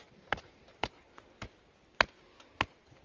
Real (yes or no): yes